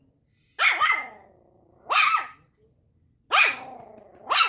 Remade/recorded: recorded